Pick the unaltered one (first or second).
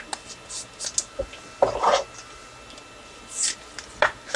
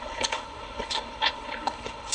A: first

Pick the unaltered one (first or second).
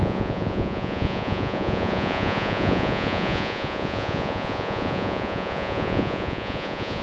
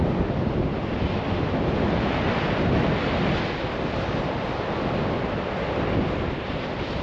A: second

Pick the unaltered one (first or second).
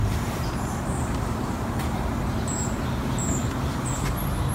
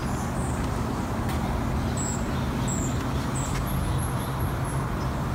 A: second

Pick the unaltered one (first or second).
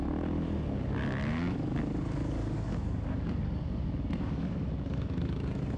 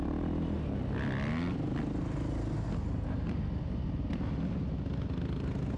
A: second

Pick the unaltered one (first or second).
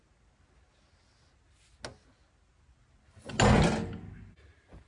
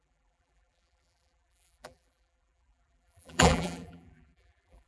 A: first